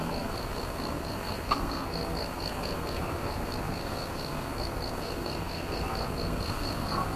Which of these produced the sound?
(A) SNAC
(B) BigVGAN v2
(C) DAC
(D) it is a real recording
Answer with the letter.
A